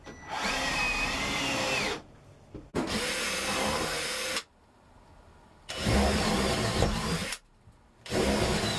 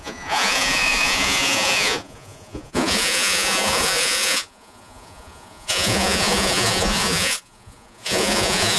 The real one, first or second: first